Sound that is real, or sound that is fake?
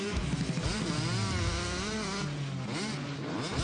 real